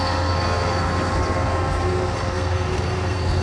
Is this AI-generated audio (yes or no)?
yes